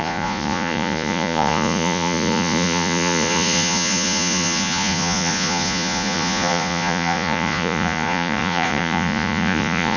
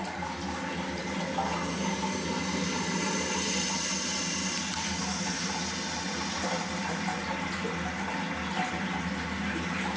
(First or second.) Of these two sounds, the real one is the second